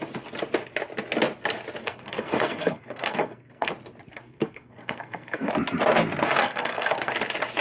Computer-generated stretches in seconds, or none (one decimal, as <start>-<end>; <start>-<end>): 1.8-3.7; 4.2-5.5; 6.4-7.1